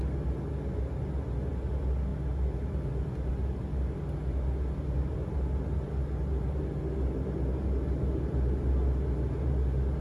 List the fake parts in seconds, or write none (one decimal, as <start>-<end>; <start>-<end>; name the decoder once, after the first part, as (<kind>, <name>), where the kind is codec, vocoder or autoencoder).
none